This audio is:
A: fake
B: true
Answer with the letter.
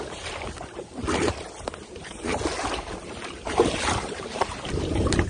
A